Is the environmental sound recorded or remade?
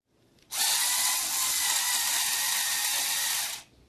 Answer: recorded